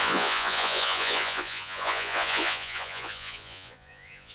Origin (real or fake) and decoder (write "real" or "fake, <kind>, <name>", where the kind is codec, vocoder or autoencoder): fake, vocoder, Vocos